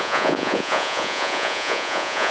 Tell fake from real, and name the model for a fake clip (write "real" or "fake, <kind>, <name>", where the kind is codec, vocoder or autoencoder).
fake, vocoder, Vocos